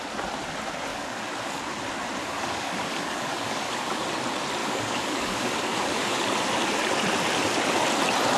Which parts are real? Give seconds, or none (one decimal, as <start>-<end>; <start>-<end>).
0.0-0.9; 1.6-2.2; 4.1-4.6; 6.2-8.4